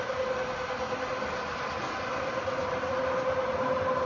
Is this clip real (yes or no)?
yes